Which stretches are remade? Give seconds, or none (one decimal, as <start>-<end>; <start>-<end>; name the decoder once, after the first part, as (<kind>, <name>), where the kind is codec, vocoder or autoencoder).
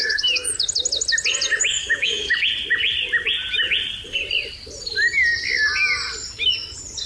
0.0-0.5 (autoencoder, DAC-VAE); 1.6-2.3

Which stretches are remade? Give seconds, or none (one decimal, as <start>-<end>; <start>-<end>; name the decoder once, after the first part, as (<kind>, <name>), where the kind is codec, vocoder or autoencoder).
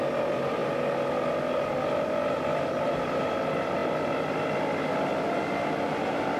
none